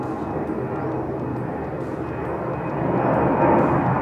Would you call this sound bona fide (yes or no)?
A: yes